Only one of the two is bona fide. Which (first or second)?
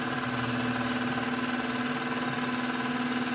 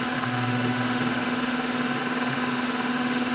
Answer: first